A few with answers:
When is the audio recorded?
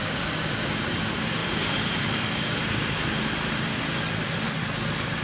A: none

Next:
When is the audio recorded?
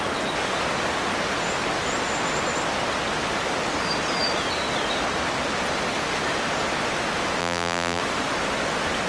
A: 0.0-7.4; 8.0-9.1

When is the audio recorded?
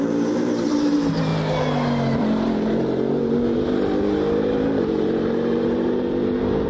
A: 1.3-2.2